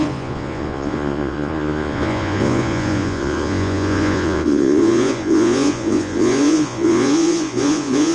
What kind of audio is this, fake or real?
fake